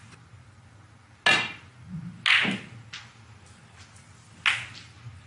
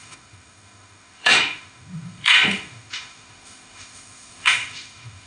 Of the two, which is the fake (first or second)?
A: second